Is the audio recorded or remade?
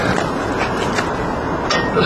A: recorded